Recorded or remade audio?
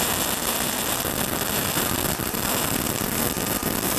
remade